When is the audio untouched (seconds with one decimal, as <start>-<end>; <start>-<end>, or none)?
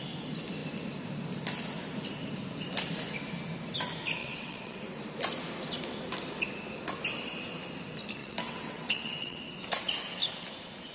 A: 0.0-4.2; 4.8-8.2; 9.4-10.9